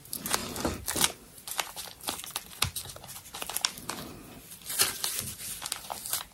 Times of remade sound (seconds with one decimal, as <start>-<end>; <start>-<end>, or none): none